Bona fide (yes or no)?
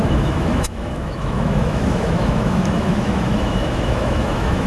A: no